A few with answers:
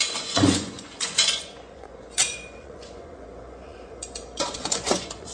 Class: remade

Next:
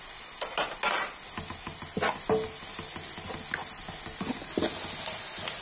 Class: recorded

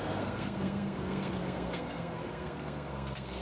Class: remade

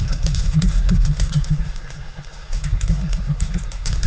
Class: remade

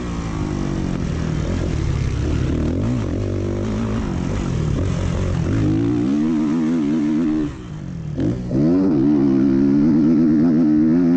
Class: recorded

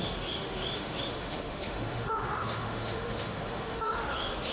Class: remade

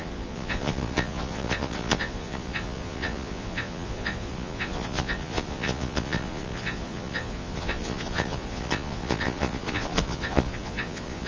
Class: remade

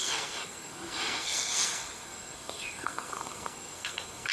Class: remade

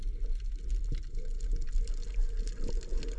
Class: recorded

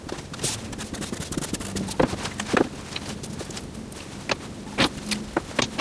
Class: recorded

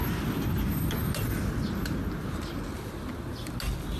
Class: recorded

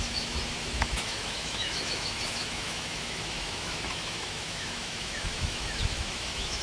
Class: remade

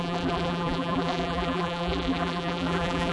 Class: remade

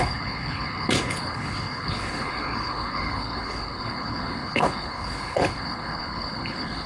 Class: remade